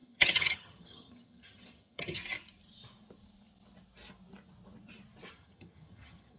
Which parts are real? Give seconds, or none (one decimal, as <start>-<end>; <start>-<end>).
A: 2.2-5.3